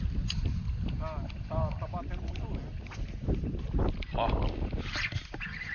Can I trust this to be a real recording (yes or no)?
yes